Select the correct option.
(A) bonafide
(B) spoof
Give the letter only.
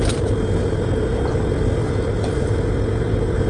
A